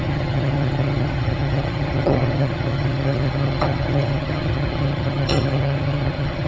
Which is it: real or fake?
fake